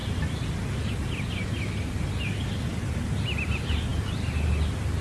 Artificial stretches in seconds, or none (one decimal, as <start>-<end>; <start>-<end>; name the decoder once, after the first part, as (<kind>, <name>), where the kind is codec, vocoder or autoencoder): 0.0-1.3 (vocoder, BigVGAN v2); 2.7-3.4